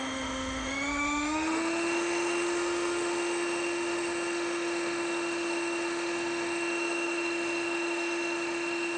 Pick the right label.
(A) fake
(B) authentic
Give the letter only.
A